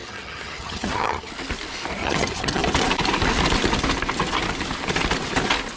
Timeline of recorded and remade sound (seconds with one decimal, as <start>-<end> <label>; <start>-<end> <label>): 0.0-1.3 remade; 1.3-2.0 recorded; 2.0-2.6 remade; 2.6-5.8 recorded